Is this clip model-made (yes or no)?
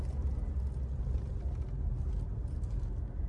no